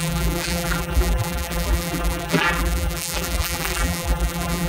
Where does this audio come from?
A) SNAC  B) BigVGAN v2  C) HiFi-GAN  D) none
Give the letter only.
B